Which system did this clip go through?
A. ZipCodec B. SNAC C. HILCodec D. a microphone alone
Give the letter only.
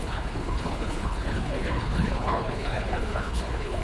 C